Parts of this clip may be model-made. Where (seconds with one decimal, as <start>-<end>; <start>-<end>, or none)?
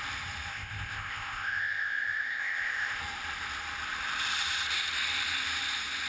0.5-3.0